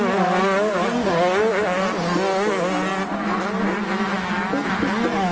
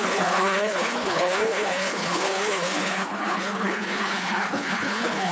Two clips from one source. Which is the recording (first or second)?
first